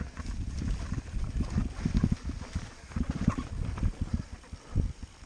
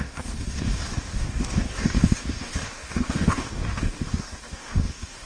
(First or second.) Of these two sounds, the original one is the first